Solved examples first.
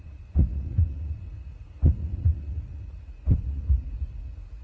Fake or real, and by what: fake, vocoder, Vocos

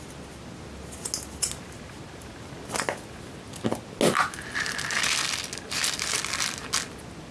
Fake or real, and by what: real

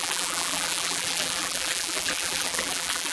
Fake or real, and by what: fake, vocoder, BigVGAN v2